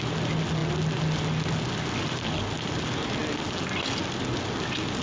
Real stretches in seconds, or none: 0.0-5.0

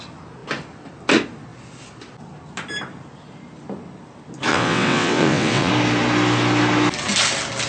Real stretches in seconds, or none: 0.0-4.5; 5.7-7.7